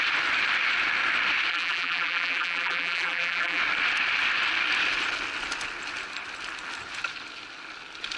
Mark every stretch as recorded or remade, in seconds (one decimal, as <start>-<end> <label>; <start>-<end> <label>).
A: 0.0-1.5 recorded; 1.5-3.6 remade; 3.6-8.2 recorded